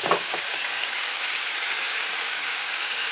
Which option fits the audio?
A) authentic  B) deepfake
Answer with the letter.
B